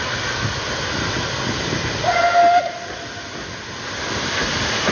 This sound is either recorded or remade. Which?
recorded